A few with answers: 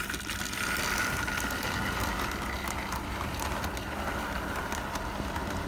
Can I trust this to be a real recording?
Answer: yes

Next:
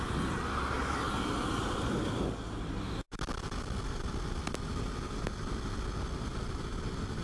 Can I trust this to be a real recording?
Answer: yes